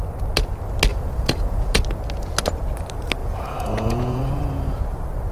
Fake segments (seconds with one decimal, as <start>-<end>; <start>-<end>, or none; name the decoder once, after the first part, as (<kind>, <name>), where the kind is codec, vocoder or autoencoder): 0.9-1.8 (vocoder, Vocos); 3.2-4.8